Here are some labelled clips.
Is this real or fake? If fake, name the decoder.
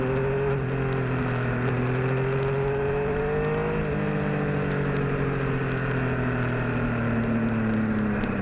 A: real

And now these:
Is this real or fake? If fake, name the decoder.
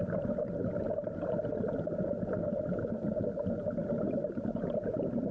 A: real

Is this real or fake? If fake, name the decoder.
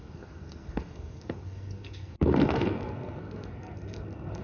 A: fake, codec, SNAC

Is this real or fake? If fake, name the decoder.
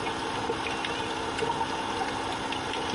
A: real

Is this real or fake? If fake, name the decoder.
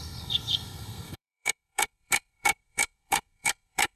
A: fake, codec, SNAC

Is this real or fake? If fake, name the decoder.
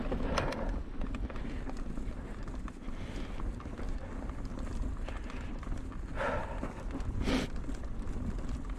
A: real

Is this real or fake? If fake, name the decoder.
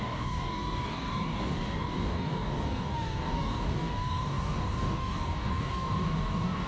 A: fake, codec, DAC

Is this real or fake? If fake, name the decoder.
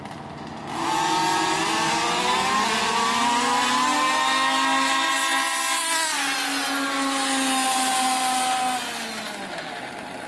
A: real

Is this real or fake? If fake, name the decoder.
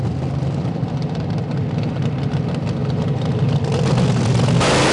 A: real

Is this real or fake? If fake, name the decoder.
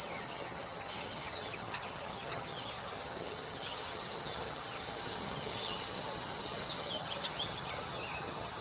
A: fake, vocoder, HiFi-GAN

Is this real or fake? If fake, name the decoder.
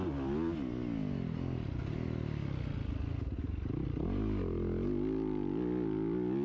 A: real